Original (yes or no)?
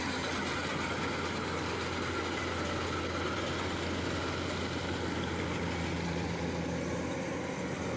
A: yes